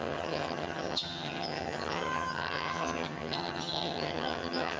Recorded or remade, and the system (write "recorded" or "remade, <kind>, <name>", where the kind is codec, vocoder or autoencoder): remade, vocoder, HiFi-GAN